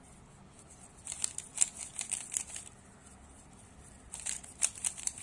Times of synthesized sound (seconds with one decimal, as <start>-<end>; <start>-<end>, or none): none